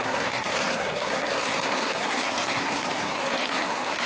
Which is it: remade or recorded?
remade